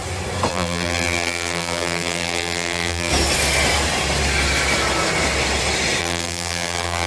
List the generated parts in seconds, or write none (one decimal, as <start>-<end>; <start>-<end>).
0.5-3.1; 6.0-7.1